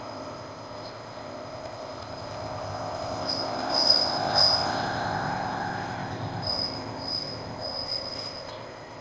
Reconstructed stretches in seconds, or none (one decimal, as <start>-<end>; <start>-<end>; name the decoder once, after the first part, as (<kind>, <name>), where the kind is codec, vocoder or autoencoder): 0.0-9.0 (codec, ZipCodec)